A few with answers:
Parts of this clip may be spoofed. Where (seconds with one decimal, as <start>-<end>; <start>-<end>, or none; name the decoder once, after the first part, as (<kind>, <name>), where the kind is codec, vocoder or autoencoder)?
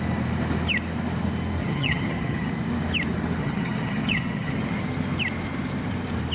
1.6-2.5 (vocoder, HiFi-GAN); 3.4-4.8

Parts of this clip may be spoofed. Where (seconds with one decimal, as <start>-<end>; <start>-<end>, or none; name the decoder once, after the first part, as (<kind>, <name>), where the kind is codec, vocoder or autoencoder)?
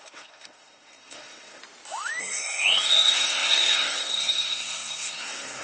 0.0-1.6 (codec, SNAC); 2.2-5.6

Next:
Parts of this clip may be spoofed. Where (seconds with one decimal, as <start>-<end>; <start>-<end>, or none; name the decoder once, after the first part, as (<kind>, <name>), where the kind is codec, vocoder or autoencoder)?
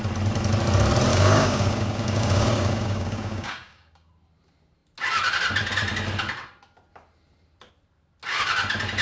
1.1-4.1 (codec, DAC)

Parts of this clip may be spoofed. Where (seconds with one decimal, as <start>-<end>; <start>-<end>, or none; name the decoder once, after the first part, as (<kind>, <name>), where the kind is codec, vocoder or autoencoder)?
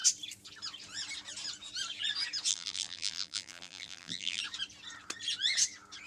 2.5-4.4 (vocoder, BigVGAN v2)